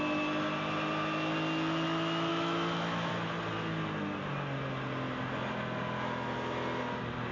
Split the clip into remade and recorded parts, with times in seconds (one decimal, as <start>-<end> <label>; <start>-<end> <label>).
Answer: 0.0-2.3 recorded; 2.3-3.1 remade; 3.1-7.3 recorded